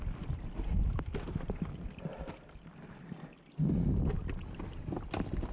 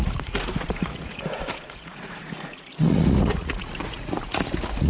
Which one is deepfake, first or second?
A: second